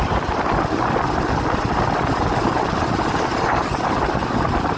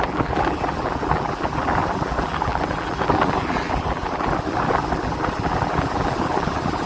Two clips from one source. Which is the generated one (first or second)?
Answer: second